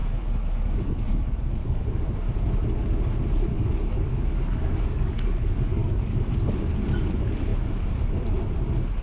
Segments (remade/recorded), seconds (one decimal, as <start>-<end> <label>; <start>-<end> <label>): 0.0-1.2 remade; 1.2-1.6 recorded; 1.6-2.2 remade; 2.2-3.5 recorded; 3.5-6.3 remade; 6.3-9.0 recorded